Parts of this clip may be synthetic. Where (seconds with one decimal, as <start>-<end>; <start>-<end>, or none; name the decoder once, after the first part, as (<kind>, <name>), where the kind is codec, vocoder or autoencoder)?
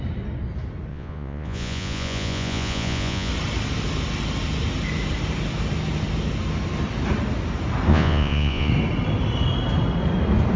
0.9-3.3 (vocoder, Vocos); 7.9-8.7